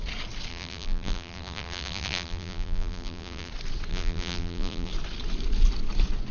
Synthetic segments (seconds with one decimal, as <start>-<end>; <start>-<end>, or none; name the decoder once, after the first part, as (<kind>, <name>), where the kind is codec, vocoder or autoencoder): 0.5-3.5 (vocoder, BigVGAN v2); 3.9-4.9